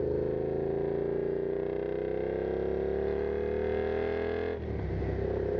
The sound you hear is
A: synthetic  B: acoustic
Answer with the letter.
B